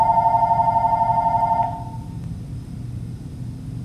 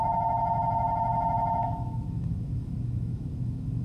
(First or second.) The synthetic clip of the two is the second